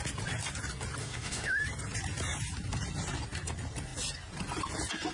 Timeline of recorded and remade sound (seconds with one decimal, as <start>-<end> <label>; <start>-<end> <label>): 0.0-1.0 recorded; 1.0-1.6 remade; 1.6-5.1 recorded